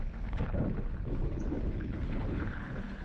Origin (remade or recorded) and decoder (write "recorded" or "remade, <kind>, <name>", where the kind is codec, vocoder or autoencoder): remade, codec, HILCodec